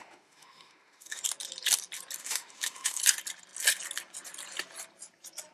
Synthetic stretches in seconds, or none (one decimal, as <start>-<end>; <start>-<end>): 0.0-1.2; 2.2-3.0